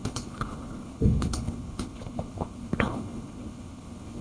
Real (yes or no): no